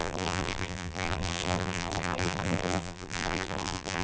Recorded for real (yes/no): no